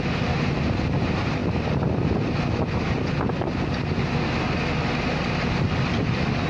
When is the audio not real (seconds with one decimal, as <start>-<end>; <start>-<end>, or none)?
none